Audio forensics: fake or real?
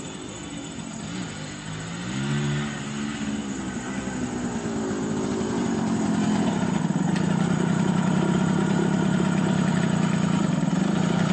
real